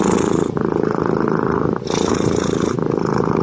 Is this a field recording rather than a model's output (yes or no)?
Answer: yes